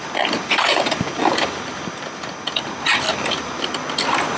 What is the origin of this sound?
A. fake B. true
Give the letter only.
A